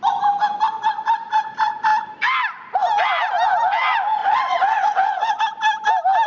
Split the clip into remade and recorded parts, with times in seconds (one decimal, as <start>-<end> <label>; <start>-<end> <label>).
0.0-4.2 recorded; 4.2-5.4 remade; 5.4-6.3 recorded